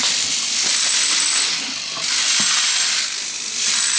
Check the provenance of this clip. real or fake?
real